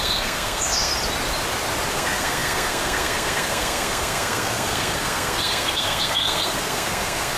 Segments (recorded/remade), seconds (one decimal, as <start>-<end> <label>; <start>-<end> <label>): 0.0-0.9 remade; 0.9-1.9 recorded; 1.9-7.4 remade